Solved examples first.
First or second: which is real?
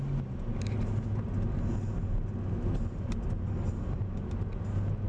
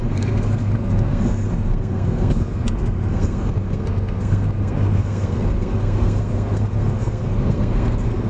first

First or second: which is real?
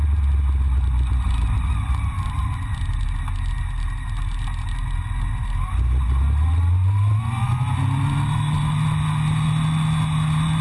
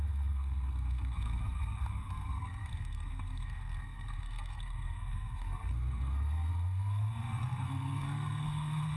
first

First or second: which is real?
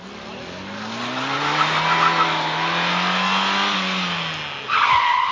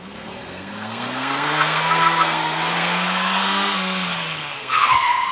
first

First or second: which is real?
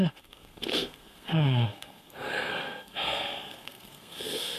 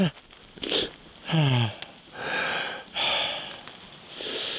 second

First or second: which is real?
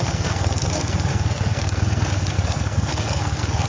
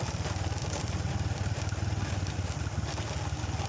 second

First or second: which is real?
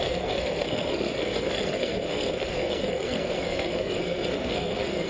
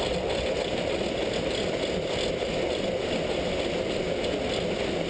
second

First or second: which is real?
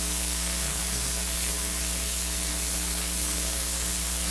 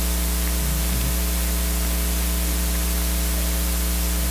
second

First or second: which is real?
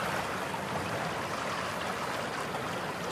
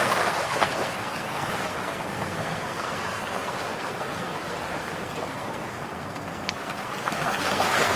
first